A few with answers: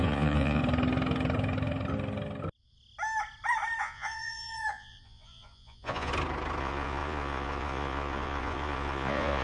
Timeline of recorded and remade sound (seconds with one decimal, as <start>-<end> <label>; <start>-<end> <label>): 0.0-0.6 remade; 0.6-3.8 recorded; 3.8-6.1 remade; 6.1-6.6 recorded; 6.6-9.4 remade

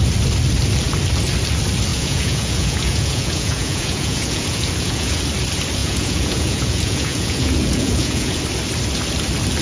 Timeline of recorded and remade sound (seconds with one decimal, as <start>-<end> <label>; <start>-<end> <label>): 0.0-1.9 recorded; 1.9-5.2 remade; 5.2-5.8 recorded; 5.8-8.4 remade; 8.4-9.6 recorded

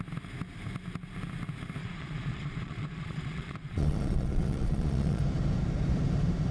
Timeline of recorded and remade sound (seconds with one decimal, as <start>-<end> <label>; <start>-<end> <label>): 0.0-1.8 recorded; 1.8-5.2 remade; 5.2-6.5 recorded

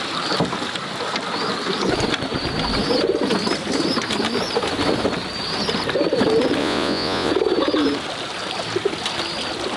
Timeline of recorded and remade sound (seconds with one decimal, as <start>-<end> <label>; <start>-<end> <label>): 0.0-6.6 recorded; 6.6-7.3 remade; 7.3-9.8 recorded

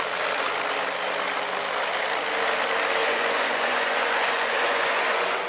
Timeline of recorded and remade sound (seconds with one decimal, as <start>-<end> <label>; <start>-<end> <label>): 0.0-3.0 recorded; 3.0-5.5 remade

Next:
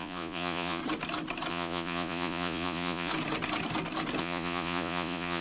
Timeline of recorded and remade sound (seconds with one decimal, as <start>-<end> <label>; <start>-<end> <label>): 0.0-0.8 remade; 0.8-1.5 recorded; 1.5-3.1 remade; 3.1-4.2 recorded; 4.2-5.4 remade